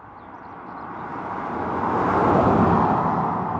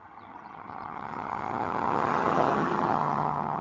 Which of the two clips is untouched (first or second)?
first